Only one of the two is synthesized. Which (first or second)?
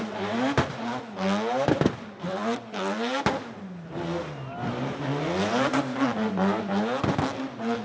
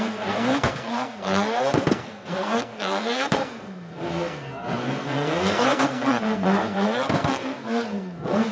second